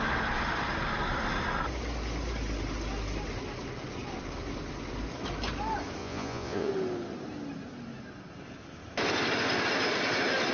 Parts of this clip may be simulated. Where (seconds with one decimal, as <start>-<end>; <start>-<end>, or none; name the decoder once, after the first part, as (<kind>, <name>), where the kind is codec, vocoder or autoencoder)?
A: 6.0-6.7 (vocoder, Vocos)

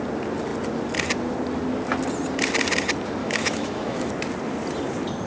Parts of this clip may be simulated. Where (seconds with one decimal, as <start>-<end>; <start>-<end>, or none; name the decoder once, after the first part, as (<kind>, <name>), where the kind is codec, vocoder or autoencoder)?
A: 3.2-4.1 (autoencoder, DAC-VAE)

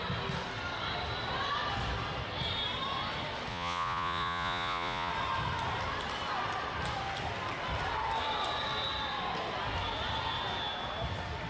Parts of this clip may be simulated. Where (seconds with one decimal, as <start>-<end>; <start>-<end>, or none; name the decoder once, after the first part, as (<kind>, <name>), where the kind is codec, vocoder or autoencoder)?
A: 3.5-5.1 (vocoder, Vocos)

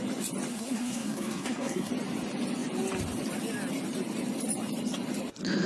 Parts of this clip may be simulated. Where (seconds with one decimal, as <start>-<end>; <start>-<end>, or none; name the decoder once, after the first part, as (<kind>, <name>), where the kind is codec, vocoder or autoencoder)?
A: 0.5-1.9 (codec, SNAC)

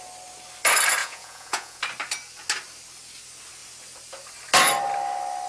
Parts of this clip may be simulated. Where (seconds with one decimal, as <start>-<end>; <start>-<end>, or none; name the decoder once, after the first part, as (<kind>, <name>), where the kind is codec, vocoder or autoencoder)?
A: 1.0-1.8 (vocoder, Vocos)

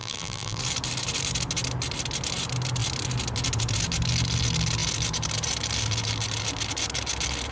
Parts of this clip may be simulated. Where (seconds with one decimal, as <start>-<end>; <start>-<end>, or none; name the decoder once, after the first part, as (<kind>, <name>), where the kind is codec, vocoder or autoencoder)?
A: 0.0-0.6 (vocoder, BigVGAN v2)